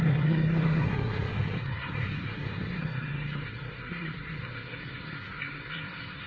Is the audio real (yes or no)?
no